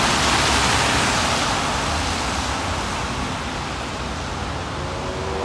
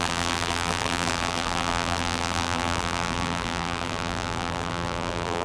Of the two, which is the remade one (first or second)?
second